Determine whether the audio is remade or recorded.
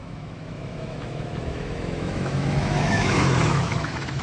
remade